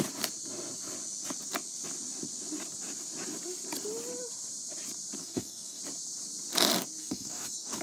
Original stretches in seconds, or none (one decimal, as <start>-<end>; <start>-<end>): 0.0-5.2; 5.8-7.0

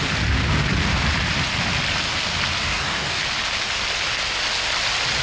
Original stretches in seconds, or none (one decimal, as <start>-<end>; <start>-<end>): 0.0-2.6; 3.2-5.2

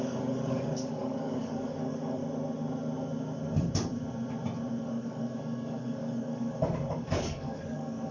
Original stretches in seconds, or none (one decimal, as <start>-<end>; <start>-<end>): 2.2-4.8

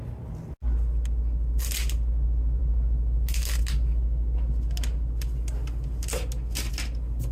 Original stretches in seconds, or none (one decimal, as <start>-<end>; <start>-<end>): 0.0-7.3

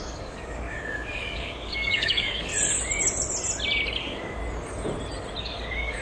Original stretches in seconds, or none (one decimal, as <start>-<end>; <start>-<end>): 2.5-4.0; 4.4-5.4

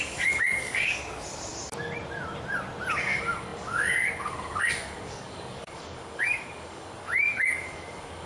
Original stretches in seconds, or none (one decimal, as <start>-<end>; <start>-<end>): 1.0-3.0

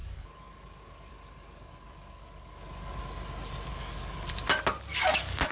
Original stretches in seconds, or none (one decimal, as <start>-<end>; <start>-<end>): 3.0-3.7; 4.3-4.9